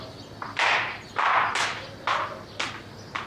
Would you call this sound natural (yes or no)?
yes